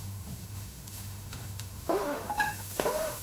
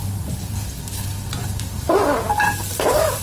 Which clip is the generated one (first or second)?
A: first